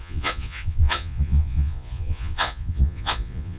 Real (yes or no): no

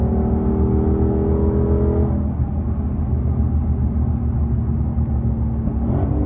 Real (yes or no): yes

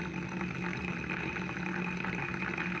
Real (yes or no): yes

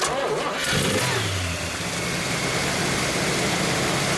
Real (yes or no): yes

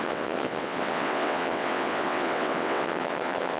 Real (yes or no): no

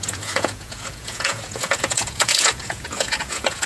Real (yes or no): no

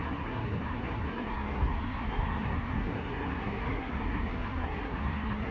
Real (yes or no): no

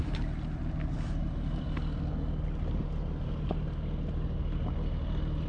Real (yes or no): yes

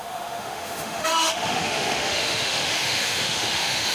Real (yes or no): no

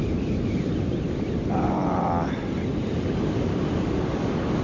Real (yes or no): yes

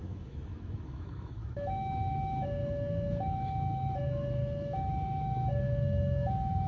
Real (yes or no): no